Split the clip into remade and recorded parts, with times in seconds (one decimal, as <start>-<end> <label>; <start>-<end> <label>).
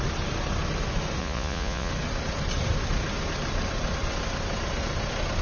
0.0-1.2 recorded; 1.2-1.9 remade; 1.9-5.4 recorded